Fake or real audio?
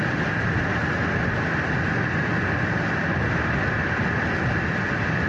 real